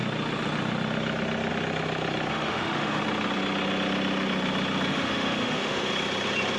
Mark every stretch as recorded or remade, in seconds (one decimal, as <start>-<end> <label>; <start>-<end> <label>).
0.0-2.3 recorded; 2.3-3.0 remade; 3.0-4.9 recorded; 4.9-5.9 remade; 5.9-6.6 recorded